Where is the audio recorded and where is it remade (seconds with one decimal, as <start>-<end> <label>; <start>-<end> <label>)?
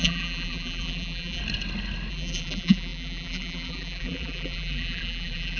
0.0-1.4 remade; 1.4-2.1 recorded; 2.1-5.6 remade